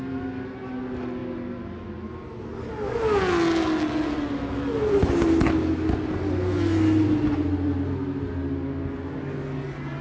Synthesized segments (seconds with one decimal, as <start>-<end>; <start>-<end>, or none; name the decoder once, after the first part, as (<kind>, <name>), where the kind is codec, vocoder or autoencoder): none